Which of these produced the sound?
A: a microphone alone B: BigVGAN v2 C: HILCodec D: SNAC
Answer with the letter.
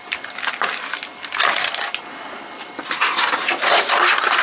A